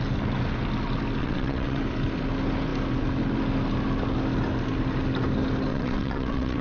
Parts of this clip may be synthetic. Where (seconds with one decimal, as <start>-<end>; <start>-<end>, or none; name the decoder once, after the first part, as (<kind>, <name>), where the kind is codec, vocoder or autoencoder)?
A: 1.2-1.8 (vocoder, WaveNeXt); 5.7-6.6